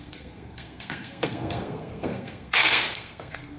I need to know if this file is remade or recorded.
remade